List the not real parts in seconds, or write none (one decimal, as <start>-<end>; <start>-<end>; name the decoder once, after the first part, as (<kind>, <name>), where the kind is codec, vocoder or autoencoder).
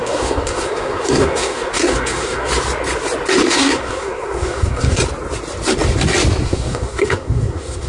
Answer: 0.0-2.5 (codec, SNAC); 3.5-5.0; 6.4-7.9